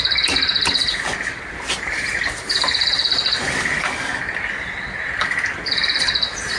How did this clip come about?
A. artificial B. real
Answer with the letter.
B